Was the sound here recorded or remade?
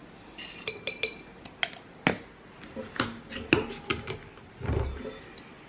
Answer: recorded